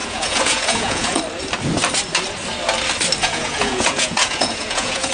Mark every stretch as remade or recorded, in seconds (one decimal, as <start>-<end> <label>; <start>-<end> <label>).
0.0-1.2 remade; 1.2-3.2 recorded; 3.2-5.1 remade